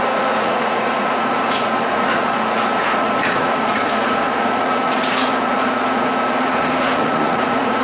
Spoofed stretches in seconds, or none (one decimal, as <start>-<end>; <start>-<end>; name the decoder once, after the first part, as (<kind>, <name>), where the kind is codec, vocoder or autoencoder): 0.0-7.8 (vocoder, Vocos)